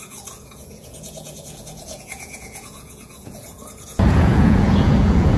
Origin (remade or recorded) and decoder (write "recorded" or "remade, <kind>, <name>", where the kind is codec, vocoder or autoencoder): remade, vocoder, Vocos